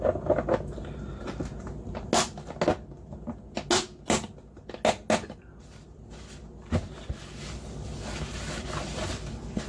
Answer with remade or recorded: recorded